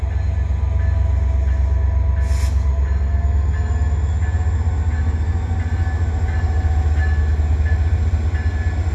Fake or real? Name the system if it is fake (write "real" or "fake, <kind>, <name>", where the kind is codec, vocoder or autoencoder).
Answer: real